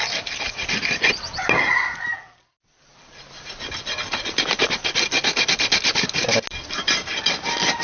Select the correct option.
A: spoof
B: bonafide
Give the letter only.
B